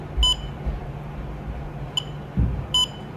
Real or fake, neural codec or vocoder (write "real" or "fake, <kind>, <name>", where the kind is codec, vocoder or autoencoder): real